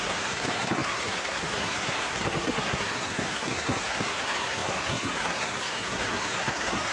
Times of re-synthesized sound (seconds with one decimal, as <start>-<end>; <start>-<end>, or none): 0.0-6.9